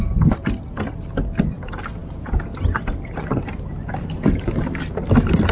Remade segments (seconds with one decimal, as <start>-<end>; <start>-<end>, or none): none